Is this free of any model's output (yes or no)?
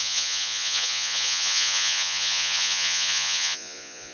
no